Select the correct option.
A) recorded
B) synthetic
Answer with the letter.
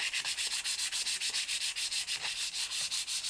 A